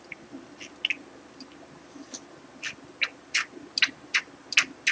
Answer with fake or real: real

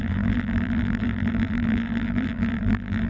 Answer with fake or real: fake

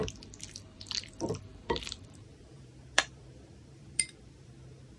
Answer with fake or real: fake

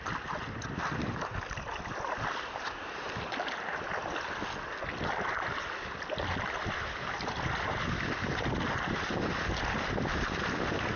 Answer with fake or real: real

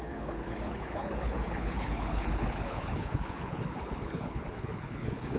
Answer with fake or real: fake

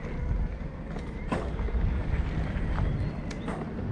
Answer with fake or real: real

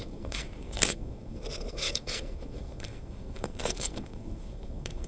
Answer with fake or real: fake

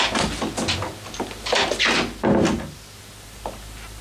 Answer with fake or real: real